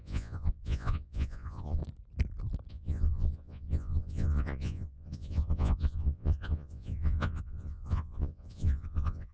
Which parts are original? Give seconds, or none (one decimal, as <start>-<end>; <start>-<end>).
1.8-2.7